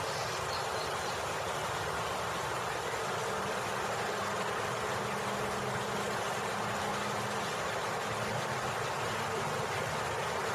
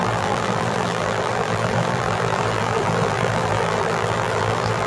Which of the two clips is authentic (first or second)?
first